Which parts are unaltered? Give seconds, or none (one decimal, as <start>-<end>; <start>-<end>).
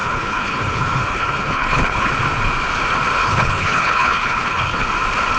2.1-3.2; 4.8-5.4